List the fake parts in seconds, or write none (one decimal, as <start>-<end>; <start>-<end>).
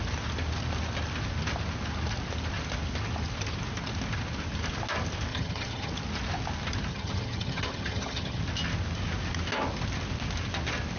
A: 5.3-5.9; 6.9-8.4